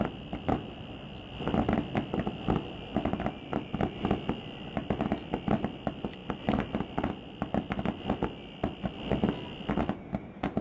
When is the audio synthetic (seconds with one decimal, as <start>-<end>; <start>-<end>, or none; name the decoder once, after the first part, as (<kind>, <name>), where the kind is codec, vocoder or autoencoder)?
none